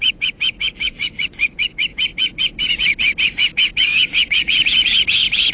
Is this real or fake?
fake